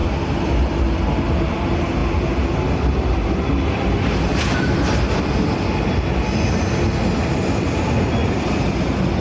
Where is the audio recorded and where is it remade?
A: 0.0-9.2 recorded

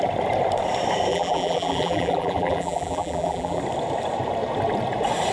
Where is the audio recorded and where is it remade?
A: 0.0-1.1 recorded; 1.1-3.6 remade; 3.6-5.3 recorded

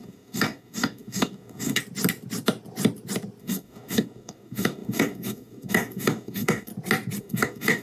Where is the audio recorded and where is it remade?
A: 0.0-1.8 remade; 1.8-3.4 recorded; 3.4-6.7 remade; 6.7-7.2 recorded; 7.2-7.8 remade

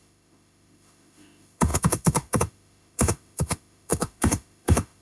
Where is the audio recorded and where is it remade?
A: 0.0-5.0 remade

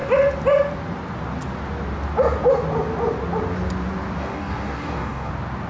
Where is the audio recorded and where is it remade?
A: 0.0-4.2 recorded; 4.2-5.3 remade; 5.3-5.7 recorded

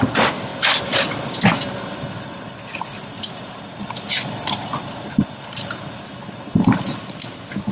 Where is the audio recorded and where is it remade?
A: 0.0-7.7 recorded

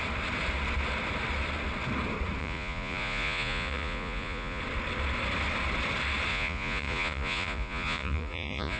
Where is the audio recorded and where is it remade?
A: 0.0-2.4 recorded; 2.4-4.6 remade; 4.6-6.3 recorded; 6.3-8.8 remade